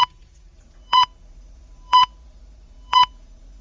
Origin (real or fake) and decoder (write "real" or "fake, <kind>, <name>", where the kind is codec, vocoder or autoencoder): fake, vocoder, Vocos